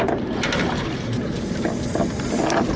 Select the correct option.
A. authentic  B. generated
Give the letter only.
A